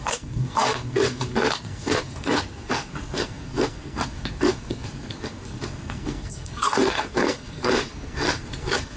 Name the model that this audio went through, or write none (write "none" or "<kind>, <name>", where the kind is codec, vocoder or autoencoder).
codec, SNAC